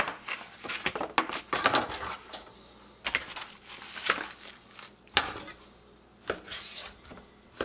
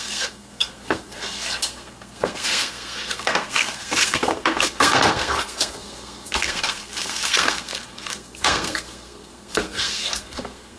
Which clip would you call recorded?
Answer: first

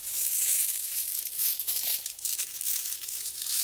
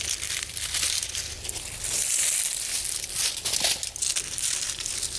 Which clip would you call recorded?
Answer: second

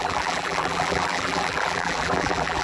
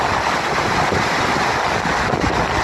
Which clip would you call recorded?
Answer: second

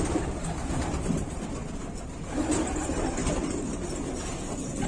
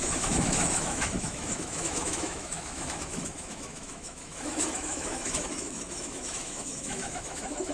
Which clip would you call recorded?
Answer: first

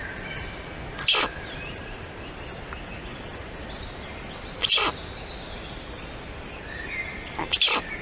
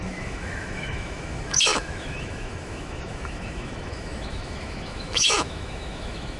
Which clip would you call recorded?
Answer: first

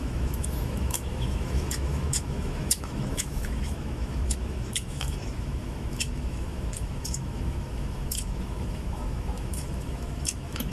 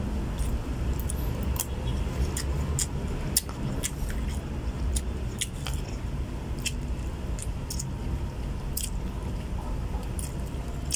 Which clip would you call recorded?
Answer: second